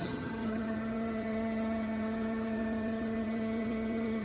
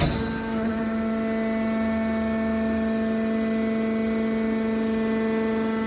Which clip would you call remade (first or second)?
first